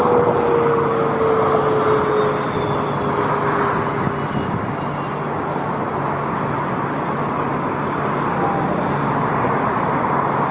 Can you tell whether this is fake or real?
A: real